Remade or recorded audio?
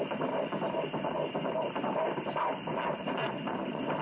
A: recorded